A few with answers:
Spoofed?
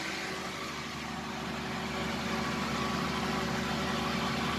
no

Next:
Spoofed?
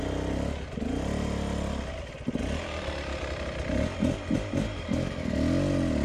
no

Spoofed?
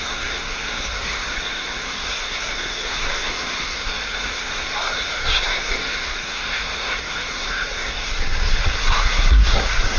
yes